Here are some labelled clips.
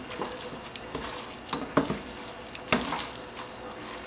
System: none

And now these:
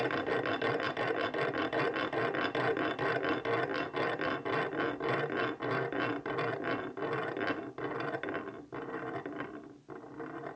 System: none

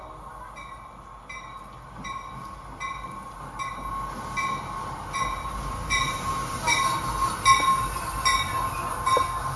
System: none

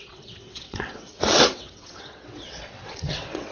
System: vocoder, WaveNeXt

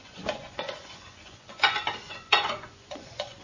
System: vocoder, Vocos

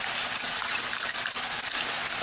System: none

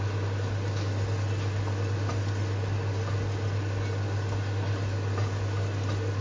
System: none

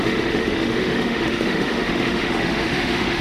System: autoencoder, DAC-VAE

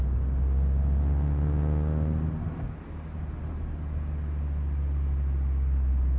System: none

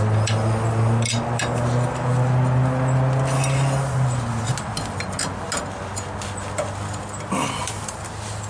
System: none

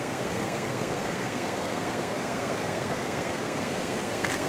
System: codec, SNAC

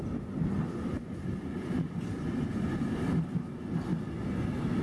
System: none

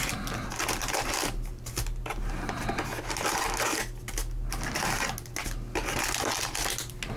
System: none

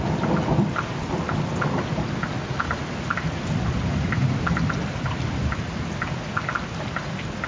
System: none